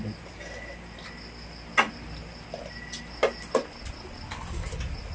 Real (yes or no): yes